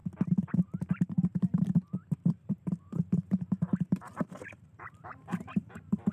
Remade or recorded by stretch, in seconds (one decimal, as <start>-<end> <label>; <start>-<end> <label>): 0.0-0.5 recorded; 0.5-6.1 remade